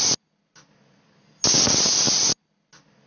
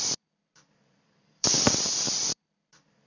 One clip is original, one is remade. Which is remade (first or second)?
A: second